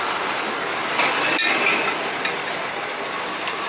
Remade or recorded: recorded